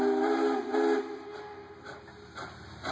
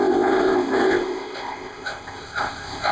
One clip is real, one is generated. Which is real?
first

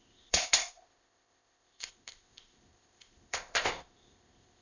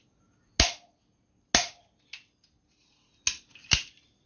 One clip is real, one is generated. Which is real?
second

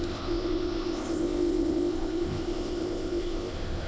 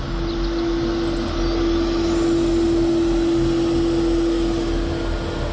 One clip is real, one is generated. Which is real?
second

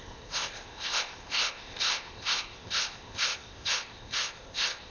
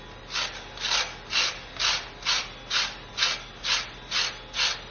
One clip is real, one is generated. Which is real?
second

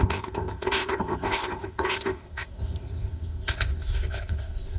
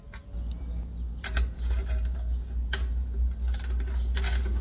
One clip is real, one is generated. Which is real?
second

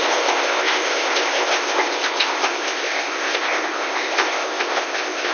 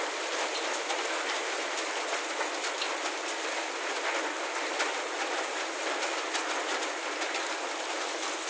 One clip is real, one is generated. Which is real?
second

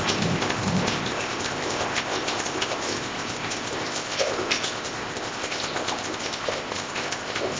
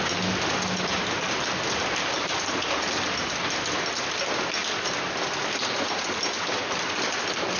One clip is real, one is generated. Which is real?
second